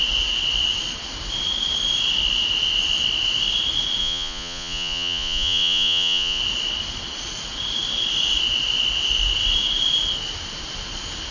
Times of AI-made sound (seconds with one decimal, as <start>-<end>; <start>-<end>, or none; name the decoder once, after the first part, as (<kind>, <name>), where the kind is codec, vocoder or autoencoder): 4.0-6.4 (vocoder, Vocos)

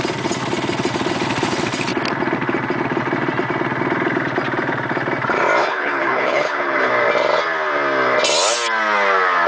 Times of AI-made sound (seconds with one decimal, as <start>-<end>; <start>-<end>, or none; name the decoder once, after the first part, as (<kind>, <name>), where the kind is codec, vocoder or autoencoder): 5.6-6.9 (codec, HILCodec)

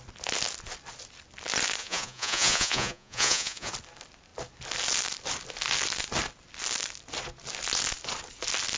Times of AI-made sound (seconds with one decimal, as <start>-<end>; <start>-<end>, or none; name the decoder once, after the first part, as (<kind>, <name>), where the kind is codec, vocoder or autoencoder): 1.8-3.7 (vocoder, Vocos)

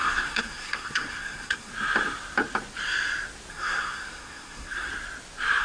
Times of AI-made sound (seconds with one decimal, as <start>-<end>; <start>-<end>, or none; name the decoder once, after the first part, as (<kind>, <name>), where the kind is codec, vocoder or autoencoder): 0.0-1.7 (codec, SNAC); 3.5-4.9